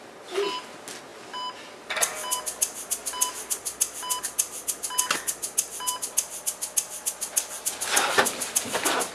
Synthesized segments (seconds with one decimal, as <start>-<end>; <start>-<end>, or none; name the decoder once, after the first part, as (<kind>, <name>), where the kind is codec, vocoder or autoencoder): none